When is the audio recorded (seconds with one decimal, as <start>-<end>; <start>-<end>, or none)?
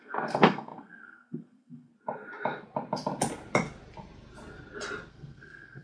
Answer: 1.9-5.1